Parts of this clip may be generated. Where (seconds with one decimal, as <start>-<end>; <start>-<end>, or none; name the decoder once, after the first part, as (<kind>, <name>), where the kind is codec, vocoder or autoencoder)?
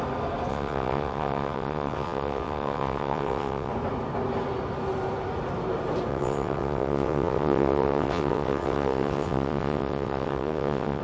0.5-3.7 (vocoder, WaveNeXt); 6.1-11.0